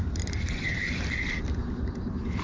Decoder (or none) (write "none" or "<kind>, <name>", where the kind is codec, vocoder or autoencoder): none